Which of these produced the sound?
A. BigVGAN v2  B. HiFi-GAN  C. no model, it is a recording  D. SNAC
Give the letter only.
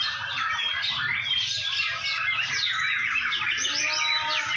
C